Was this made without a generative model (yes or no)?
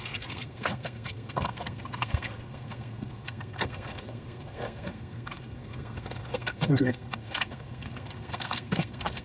no